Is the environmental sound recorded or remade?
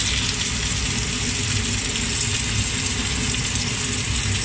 recorded